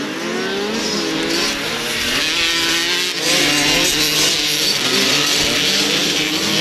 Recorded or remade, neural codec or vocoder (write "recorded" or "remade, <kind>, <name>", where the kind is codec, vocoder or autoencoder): recorded